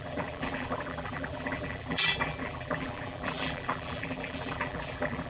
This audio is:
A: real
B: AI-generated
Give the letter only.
B